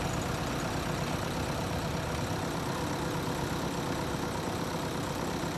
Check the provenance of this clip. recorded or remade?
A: recorded